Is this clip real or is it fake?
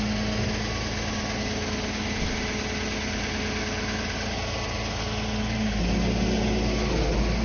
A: real